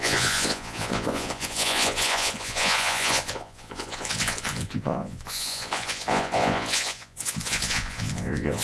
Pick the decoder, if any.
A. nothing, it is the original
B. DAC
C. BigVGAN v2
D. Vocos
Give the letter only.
D